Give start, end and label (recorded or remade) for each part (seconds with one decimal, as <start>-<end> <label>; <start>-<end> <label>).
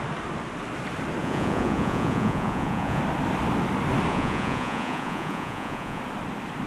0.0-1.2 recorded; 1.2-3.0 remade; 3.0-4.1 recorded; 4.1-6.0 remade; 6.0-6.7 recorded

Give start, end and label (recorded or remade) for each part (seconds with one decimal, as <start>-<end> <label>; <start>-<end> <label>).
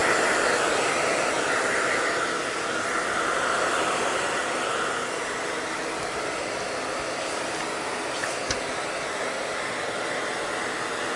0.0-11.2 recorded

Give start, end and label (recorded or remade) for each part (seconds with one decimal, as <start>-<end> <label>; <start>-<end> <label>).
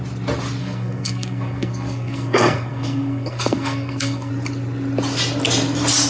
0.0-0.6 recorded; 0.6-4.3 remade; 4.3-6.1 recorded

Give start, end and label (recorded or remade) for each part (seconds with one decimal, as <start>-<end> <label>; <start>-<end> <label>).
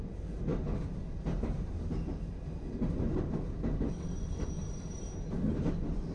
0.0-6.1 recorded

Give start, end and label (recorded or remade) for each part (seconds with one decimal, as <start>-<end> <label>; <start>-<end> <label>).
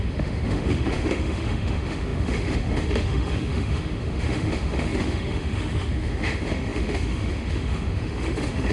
0.0-8.7 remade